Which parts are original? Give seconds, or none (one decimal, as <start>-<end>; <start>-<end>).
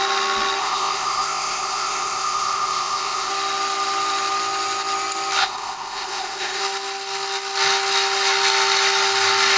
0.0-0.6; 3.3-5.4; 6.6-9.6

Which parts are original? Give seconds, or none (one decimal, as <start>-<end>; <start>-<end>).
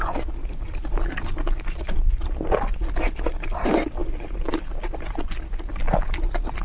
0.0-6.6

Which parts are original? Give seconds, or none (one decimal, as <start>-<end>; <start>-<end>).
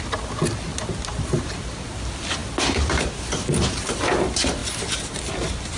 0.0-5.8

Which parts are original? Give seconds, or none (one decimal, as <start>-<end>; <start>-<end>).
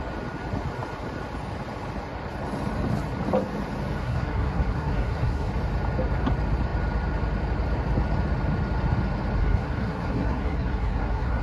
0.0-4.0; 5.5-9.4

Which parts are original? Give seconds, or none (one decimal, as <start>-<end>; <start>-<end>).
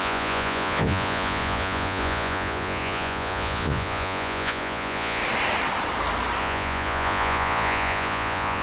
5.2-6.4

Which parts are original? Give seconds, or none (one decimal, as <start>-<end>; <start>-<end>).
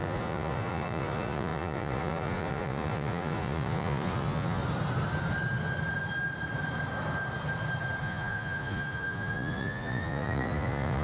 4.6-8.0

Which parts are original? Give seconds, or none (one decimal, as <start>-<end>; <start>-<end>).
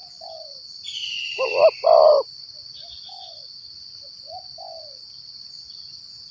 0.0-6.3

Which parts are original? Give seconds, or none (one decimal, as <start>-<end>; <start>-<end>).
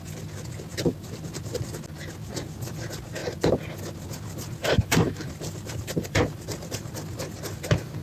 0.0-4.6; 6.8-8.0